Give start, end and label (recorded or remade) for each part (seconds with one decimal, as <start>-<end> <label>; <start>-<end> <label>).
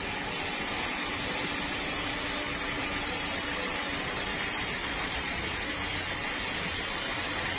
0.0-4.8 recorded; 4.8-5.6 remade; 5.6-7.6 recorded